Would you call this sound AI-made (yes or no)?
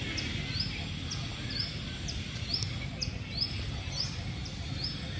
no